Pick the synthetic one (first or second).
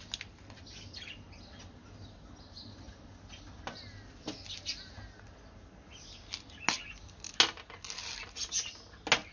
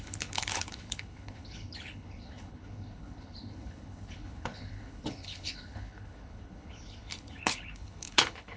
second